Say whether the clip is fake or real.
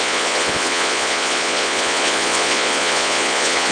fake